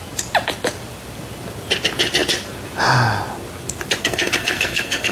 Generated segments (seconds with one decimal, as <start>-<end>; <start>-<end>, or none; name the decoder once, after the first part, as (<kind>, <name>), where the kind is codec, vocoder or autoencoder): 4.0-5.1 (codec, SNAC)